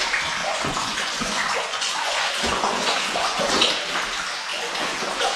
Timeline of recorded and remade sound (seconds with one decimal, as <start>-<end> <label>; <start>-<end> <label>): 0.0-0.4 recorded; 0.4-3.5 remade; 3.5-4.5 recorded; 4.5-5.4 remade